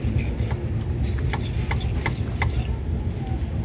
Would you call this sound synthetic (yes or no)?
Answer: no